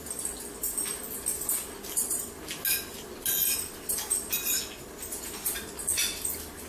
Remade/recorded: recorded